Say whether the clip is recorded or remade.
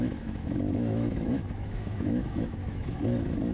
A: remade